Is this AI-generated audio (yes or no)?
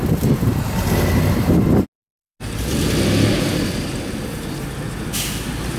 no